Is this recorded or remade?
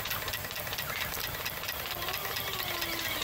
remade